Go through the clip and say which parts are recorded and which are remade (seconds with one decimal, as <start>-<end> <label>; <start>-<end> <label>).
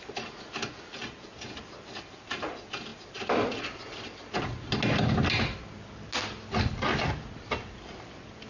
0.0-8.5 recorded